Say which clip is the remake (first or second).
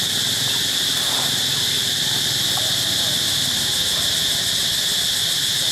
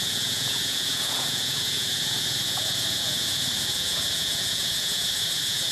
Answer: second